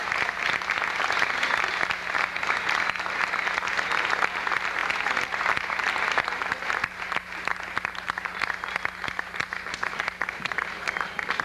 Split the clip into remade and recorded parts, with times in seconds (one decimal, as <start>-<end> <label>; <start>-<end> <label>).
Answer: 0.0-11.4 recorded